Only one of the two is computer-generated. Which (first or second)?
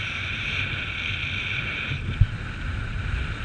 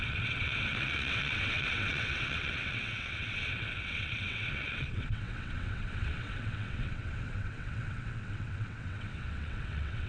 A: second